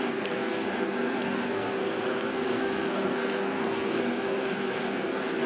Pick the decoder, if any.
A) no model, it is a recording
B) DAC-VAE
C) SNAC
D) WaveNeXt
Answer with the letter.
C